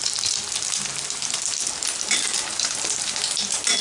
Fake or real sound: real